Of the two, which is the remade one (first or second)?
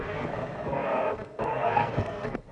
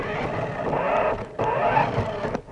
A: first